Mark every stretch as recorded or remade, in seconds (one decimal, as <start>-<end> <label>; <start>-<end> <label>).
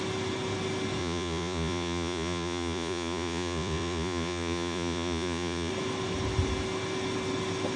0.0-1.0 recorded; 1.0-5.7 remade; 5.7-7.8 recorded